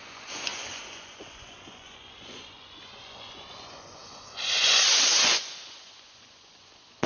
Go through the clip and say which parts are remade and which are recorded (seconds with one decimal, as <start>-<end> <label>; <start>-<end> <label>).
0.0-7.1 remade